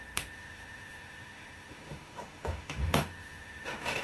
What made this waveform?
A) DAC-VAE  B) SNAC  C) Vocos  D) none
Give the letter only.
A